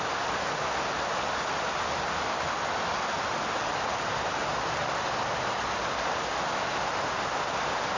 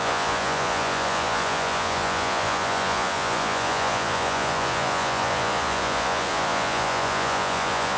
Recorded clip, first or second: first